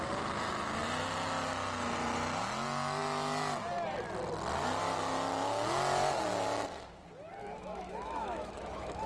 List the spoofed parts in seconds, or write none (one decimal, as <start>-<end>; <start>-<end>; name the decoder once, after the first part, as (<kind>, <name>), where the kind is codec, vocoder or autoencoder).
7.4-9.1 (autoencoder, DAC-VAE)